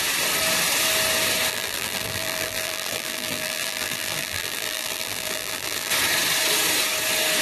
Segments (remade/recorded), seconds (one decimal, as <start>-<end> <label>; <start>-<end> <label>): 0.0-1.5 recorded; 1.5-5.9 remade; 5.9-7.4 recorded